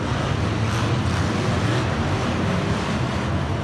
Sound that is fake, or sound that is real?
real